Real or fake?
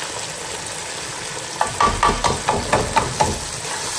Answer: real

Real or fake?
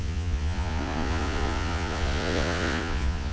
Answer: fake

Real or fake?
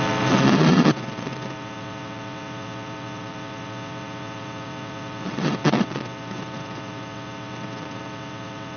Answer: fake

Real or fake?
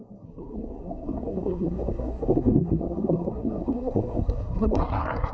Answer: fake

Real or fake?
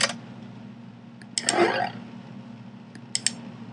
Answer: real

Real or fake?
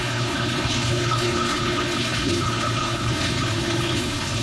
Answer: fake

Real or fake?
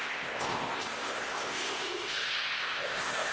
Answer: fake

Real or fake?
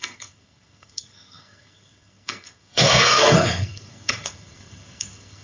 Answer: fake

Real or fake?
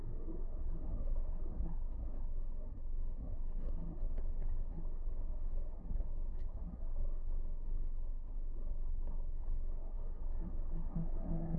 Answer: fake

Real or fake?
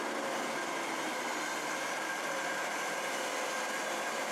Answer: real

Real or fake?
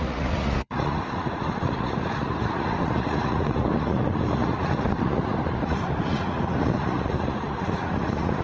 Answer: fake